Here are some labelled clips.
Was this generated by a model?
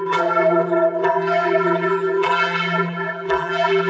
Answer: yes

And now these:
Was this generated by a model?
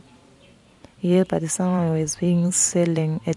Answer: yes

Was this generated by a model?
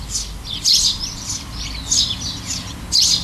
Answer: no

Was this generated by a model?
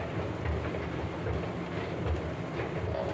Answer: no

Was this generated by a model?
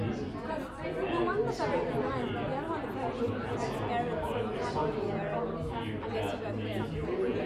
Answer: no